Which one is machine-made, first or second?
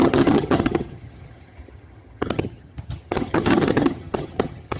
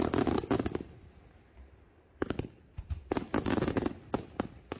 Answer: first